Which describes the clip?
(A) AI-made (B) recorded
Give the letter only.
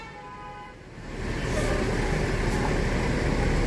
B